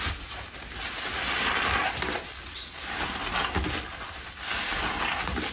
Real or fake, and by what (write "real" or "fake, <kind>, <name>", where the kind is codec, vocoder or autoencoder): real